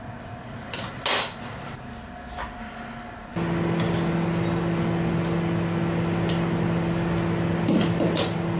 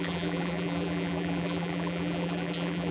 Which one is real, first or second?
first